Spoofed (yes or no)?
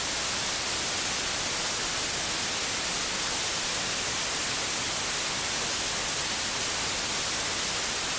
no